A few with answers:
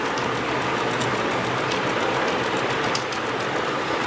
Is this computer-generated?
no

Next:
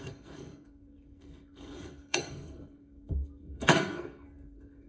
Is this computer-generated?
yes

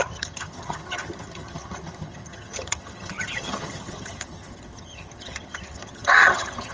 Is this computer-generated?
yes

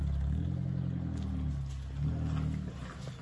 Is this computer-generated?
no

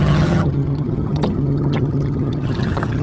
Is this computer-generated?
yes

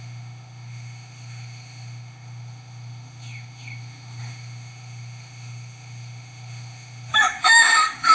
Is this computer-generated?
yes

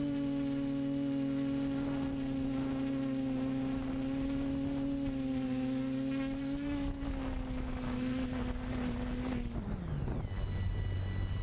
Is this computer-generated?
no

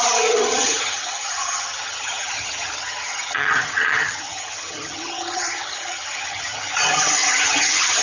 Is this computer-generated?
yes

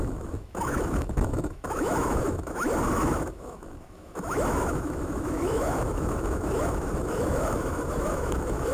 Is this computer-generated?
yes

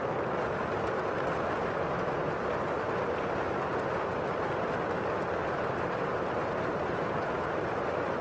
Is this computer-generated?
no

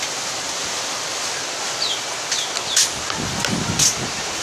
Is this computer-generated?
no